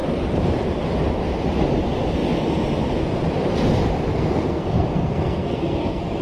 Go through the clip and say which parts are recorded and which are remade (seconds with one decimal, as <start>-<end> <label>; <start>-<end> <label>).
0.0-4.1 recorded; 4.1-6.2 remade